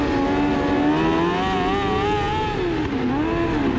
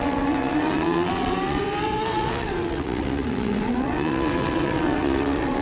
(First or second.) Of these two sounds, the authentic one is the first